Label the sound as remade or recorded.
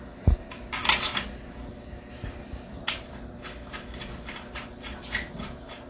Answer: recorded